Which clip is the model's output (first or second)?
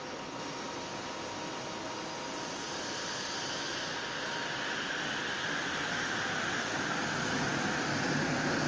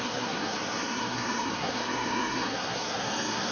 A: second